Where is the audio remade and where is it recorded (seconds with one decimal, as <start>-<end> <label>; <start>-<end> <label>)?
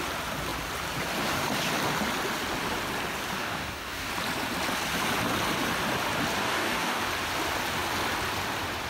0.0-3.4 recorded; 3.4-4.1 remade; 4.1-6.4 recorded; 6.4-7.0 remade; 7.0-8.9 recorded